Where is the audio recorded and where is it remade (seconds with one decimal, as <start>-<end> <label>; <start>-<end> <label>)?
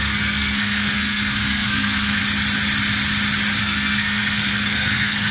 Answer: 0.0-2.2 remade; 2.2-3.6 recorded; 3.6-5.3 remade